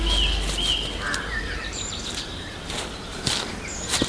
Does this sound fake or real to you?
real